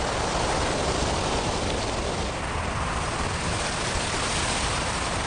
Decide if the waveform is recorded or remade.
recorded